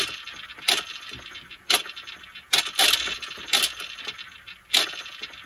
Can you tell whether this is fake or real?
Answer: real